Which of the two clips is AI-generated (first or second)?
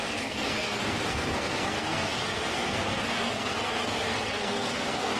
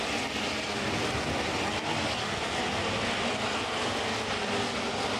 first